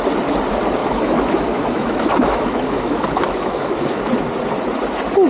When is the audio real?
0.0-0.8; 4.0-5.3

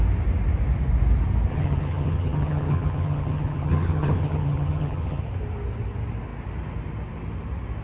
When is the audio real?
0.0-1.5; 5.2-7.8

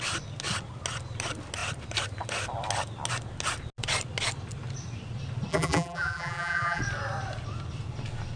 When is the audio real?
0.0-5.5; 6.8-8.4

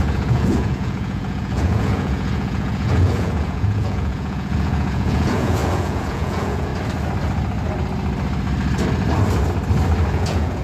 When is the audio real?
6.7-10.1

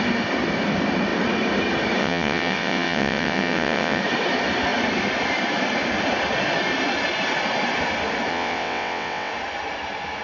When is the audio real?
0.0-2.0; 4.0-8.3; 9.3-10.2